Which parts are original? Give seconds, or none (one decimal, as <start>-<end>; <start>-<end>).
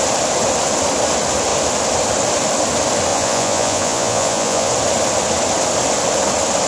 0.0-3.1; 4.7-6.7